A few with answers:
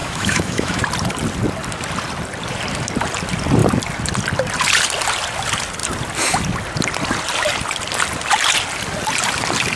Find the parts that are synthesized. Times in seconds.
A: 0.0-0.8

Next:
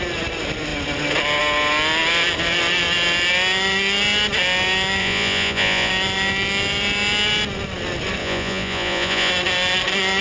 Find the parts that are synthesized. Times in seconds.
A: 5.0-5.9; 8.2-9.3

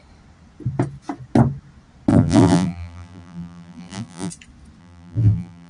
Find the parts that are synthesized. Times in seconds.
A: 2.1-4.3; 4.8-5.7

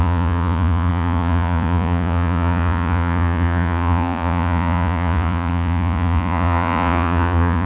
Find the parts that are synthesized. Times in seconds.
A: 0.0-7.7

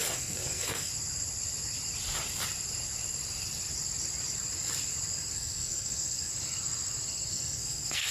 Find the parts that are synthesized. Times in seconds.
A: 0.0-0.9; 5.3-6.3; 7.3-8.1

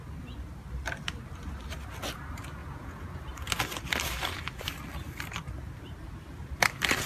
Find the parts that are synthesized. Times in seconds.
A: 2.6-3.2

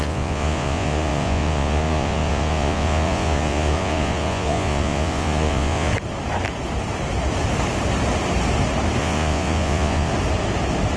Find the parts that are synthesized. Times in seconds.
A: 0.0-5.9; 9.0-10.1